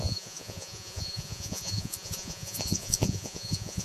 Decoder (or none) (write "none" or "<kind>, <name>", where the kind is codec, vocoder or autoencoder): vocoder, Vocos